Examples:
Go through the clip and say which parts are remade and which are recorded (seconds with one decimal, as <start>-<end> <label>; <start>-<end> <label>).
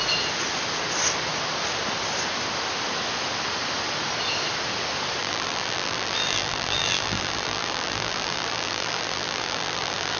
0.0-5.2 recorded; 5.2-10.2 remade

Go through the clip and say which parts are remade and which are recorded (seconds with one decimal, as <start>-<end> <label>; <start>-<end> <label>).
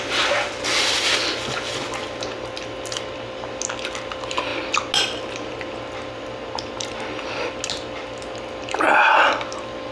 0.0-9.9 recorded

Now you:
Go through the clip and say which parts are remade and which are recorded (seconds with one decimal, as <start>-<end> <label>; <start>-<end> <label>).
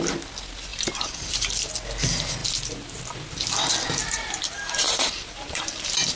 0.0-0.7 recorded; 0.7-1.7 remade; 1.7-4.0 recorded; 4.0-6.2 remade